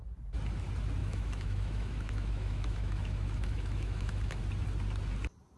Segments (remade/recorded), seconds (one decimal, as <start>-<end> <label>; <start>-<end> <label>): 0.0-1.0 recorded; 1.0-4.4 remade; 4.4-5.6 recorded